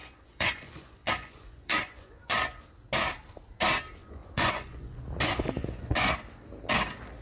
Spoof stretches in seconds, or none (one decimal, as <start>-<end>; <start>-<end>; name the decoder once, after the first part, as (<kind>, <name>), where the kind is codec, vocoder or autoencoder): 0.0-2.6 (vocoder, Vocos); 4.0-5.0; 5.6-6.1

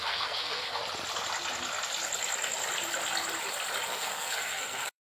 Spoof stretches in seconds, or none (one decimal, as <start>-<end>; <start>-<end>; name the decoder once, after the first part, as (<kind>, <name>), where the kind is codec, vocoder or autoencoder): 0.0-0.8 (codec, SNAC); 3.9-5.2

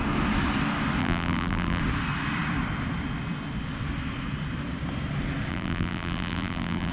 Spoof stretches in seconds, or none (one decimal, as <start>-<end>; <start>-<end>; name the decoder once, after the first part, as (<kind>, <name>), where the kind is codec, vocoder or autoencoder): 1.0-1.8 (vocoder, BigVGAN v2); 5.5-6.9

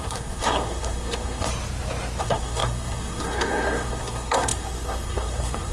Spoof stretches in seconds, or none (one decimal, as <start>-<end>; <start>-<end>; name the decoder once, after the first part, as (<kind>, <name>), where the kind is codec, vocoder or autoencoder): 0.0-1.5 (codec, SNAC); 2.2-5.7

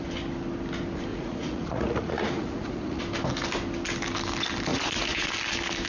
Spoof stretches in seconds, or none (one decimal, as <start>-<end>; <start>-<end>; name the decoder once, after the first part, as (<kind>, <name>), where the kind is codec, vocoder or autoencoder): 1.1-3.0 (vocoder, Vocos); 4.7-5.3

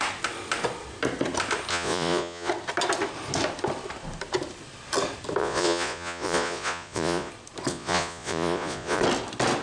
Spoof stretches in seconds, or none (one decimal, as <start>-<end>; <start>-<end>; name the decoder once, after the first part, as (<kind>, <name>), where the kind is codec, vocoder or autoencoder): 1.7-2.5 (vocoder, Vocos); 5.4-7.3; 7.7-9.0

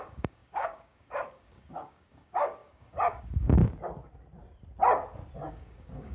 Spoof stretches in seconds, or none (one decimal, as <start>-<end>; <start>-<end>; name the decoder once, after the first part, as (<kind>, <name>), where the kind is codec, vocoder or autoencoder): 0.0-3.6 (codec, DAC); 5.5-6.1

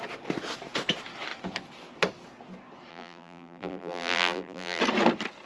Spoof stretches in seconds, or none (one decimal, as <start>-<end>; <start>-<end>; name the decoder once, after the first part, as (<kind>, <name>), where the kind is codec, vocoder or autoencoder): 2.9-4.8 (vocoder, BigVGAN v2)